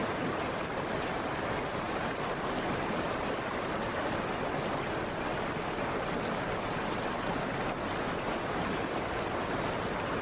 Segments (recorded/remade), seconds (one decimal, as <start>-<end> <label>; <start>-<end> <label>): 0.0-10.2 recorded